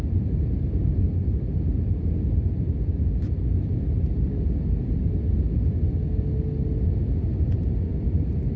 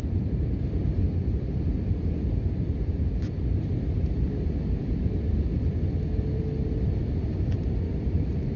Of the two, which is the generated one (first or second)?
second